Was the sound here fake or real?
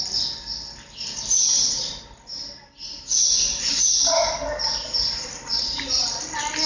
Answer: real